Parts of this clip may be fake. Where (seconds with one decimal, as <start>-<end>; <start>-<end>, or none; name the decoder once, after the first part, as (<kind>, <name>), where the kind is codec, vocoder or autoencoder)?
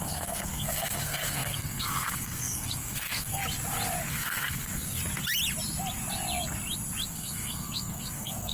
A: 0.0-3.4 (codec, SNAC); 4.1-5.0; 7.1-8.5